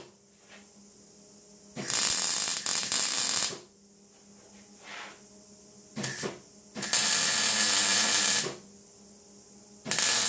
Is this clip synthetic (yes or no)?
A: no